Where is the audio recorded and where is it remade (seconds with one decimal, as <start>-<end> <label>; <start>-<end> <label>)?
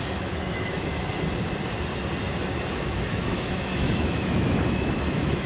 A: 0.0-0.9 remade; 0.9-2.7 recorded; 2.7-5.5 remade